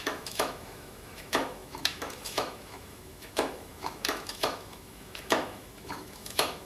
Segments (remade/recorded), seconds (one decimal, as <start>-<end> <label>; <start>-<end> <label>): 0.0-6.7 remade